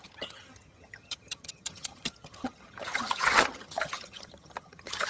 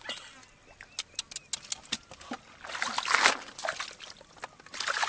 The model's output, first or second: first